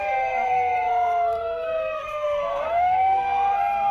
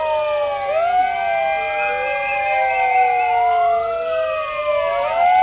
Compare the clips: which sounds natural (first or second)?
second